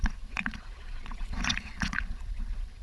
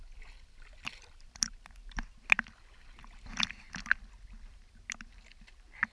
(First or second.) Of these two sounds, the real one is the second